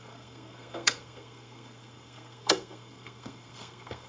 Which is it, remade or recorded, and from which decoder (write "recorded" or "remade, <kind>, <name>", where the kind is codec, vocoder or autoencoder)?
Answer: remade, codec, SNAC